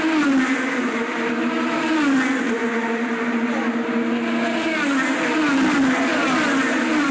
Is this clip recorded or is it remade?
recorded